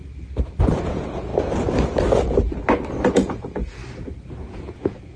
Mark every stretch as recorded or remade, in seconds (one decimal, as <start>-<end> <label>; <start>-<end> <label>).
0.0-0.6 recorded; 0.6-1.3 remade; 1.3-3.1 recorded; 3.1-3.8 remade; 3.8-4.4 recorded; 4.4-5.2 remade